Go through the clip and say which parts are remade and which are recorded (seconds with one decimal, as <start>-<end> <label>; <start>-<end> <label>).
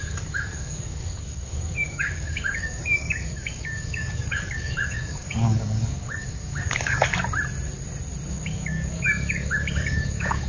0.0-7.1 remade; 7.1-8.3 recorded; 8.3-10.5 remade